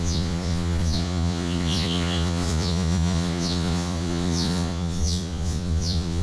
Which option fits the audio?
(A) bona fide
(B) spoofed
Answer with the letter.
B